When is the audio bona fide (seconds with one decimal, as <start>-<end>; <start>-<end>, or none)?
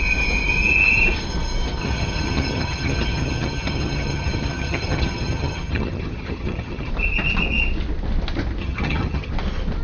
0.0-1.8; 6.9-8.6; 9.3-9.8